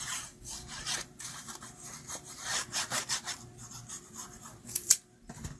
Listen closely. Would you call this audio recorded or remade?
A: remade